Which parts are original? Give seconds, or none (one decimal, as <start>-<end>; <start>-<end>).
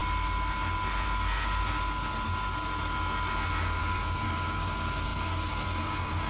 0.0-3.8